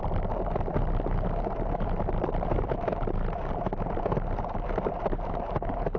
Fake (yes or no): no